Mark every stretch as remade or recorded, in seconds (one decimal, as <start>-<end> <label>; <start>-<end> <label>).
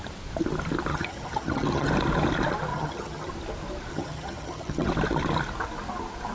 0.0-0.9 recorded; 0.9-1.9 remade; 1.9-2.7 recorded; 2.7-3.3 remade; 3.3-3.9 recorded; 3.9-4.9 remade; 4.9-6.3 recorded